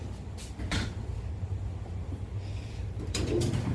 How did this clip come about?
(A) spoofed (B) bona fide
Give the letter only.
B